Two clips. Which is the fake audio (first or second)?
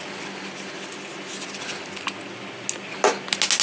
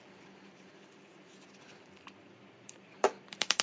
second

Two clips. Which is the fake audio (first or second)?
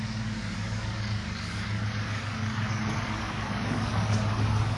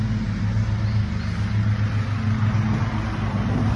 first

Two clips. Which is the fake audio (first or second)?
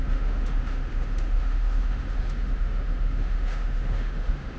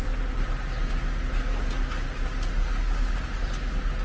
first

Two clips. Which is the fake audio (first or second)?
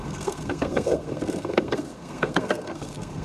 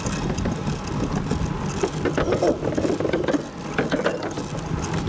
first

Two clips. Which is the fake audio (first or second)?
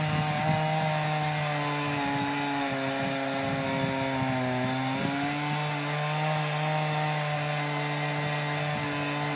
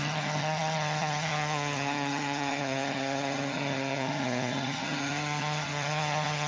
second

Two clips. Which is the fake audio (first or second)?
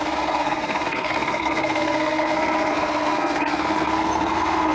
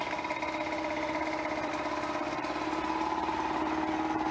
first